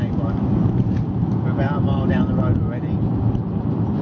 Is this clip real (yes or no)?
yes